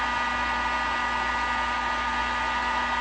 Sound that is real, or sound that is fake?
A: real